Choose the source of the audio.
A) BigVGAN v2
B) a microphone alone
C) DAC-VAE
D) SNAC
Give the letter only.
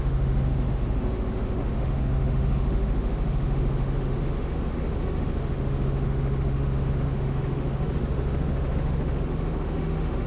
C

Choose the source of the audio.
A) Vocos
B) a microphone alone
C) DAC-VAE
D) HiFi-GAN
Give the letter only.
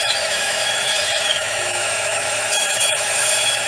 C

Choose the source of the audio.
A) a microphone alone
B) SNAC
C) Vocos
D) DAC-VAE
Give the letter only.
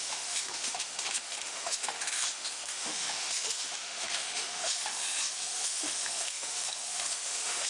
D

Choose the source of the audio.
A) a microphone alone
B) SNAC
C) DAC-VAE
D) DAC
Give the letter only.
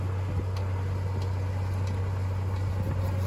A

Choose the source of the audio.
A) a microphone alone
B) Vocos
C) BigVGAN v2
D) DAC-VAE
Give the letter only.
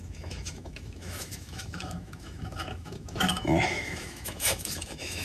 D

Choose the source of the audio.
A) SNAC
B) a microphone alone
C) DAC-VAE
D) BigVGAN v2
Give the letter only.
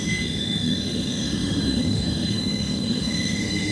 C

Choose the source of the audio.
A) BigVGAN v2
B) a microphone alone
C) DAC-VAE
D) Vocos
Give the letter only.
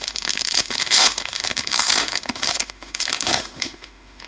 C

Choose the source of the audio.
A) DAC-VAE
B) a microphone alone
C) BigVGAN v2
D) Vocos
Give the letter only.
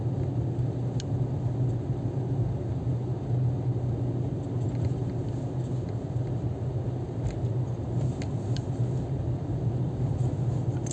B